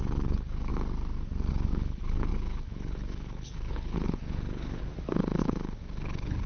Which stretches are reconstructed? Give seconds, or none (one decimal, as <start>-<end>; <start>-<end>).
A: 0.0-0.7; 1.5-4.9; 5.4-6.5